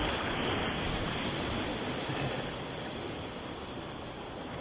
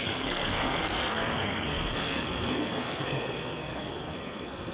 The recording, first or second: first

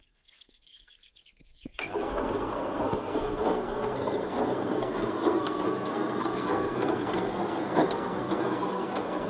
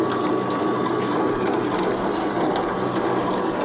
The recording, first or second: second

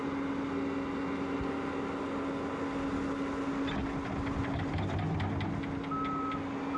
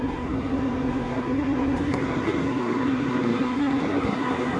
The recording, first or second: first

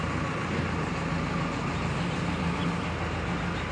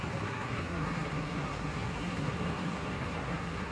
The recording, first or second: first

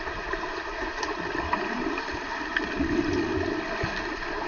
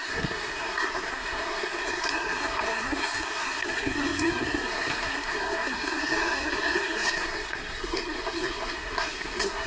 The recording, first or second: first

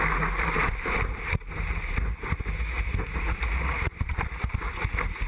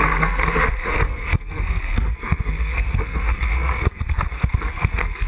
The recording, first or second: first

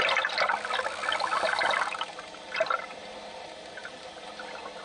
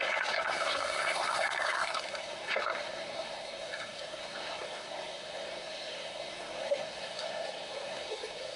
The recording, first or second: first